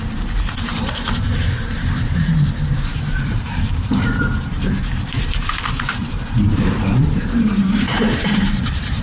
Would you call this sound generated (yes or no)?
yes